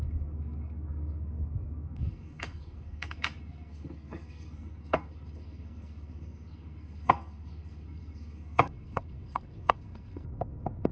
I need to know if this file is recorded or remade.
remade